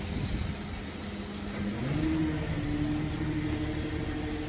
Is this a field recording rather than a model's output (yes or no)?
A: yes